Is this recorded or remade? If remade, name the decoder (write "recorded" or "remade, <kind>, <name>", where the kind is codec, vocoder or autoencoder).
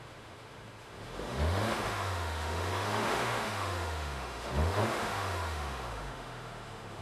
remade, autoencoder, DAC-VAE